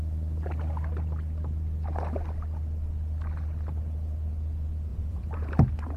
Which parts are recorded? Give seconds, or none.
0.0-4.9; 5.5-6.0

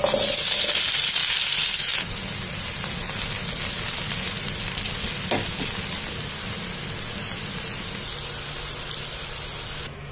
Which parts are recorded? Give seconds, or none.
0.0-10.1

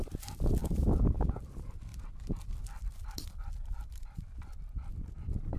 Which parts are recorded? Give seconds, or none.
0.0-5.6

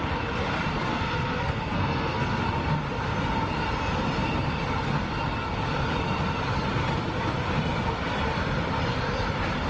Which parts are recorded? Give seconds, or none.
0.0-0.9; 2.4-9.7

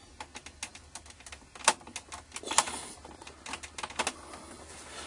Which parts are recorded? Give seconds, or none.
0.0-5.1